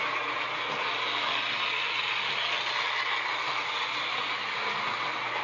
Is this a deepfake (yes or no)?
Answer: no